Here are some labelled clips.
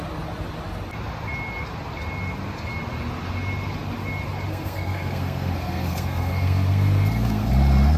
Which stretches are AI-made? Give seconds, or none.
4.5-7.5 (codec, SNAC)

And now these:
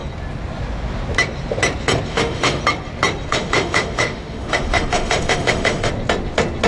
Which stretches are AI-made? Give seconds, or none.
2.1-2.6 (autoencoder, DAC-VAE); 3.3-5.9